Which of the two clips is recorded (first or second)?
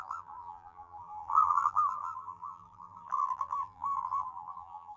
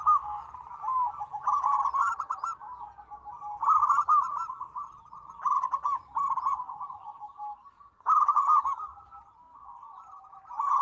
second